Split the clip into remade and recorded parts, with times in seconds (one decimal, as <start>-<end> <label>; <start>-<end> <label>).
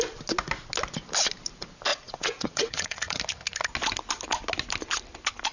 0.0-1.9 recorded; 1.9-3.2 remade; 3.2-5.5 recorded